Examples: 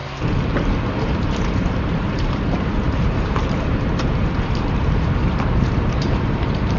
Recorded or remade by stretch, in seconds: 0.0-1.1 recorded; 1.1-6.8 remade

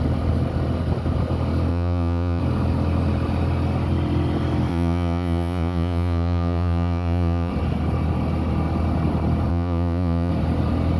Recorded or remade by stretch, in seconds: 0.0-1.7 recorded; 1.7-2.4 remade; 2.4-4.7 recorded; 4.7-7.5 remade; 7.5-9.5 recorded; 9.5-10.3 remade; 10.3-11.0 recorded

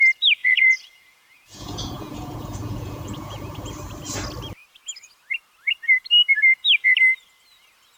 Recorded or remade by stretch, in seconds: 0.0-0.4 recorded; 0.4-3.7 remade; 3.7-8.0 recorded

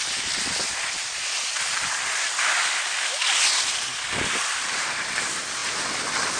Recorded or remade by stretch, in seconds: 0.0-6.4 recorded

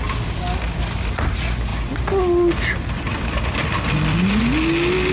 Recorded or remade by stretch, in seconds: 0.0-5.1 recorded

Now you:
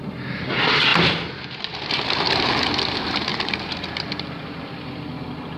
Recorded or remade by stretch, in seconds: 0.0-0.9 remade; 0.9-1.9 recorded; 1.9-3.3 remade; 3.3-4.7 recorded; 4.7-5.6 remade

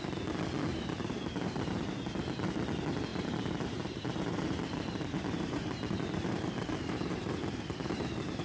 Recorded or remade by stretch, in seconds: 0.0-0.7 recorded; 0.7-1.9 remade; 1.9-3.1 recorded; 3.1-8.4 remade